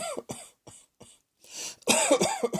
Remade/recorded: recorded